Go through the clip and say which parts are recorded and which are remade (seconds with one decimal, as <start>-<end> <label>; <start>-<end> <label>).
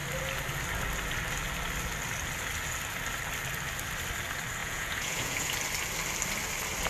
0.0-4.6 recorded; 4.6-5.5 remade; 5.5-6.9 recorded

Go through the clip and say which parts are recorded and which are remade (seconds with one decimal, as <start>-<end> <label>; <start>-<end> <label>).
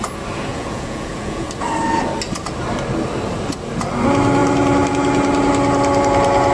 0.0-0.5 recorded; 0.5-1.5 remade; 1.5-6.5 recorded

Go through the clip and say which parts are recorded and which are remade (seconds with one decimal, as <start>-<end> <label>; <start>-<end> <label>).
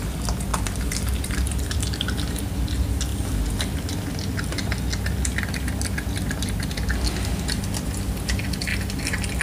0.0-0.5 recorded; 0.5-2.4 remade; 2.4-9.4 recorded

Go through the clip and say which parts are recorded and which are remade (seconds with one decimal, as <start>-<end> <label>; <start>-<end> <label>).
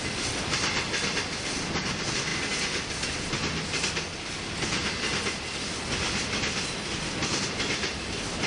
0.0-8.5 recorded